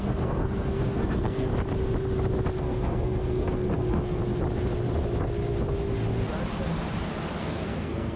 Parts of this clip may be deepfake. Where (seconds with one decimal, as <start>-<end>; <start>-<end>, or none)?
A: 0.0-1.5; 2.6-4.2; 7.4-8.2